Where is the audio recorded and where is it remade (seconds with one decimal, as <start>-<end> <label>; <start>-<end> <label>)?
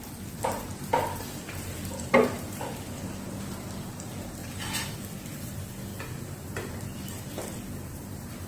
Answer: 0.0-0.7 remade; 0.7-1.3 recorded; 1.3-4.4 remade; 4.4-5.0 recorded; 5.0-5.9 remade; 5.9-8.5 recorded